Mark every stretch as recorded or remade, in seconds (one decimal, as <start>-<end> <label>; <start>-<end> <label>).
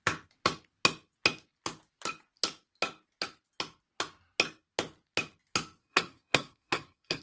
0.0-5.8 recorded; 5.8-7.2 remade